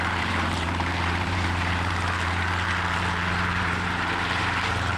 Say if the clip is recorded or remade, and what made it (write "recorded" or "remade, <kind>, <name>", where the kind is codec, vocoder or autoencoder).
remade, vocoder, BigVGAN v2